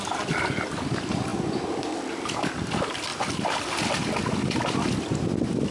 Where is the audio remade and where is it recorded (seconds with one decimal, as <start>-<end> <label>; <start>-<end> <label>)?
0.0-5.7 recorded